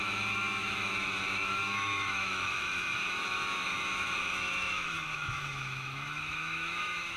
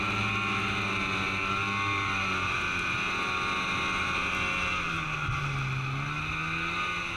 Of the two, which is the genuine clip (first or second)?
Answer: second